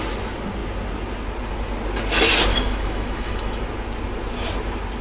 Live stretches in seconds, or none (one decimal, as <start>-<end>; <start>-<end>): 0.0-2.5; 3.6-5.0